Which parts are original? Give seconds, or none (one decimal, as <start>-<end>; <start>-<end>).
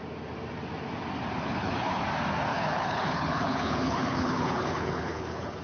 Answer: 0.0-1.4; 2.0-2.5